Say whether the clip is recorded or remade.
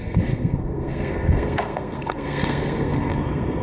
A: remade